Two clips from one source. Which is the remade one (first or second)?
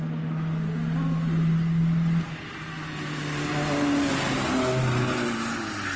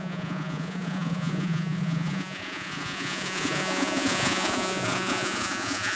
second